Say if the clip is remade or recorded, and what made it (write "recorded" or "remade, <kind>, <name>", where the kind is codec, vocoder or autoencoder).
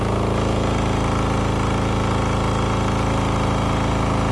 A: recorded